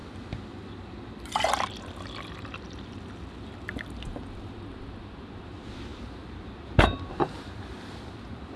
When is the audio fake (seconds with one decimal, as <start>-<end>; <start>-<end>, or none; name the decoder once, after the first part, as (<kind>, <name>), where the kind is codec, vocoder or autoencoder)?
0.0-8.6 (vocoder, BigVGAN v2)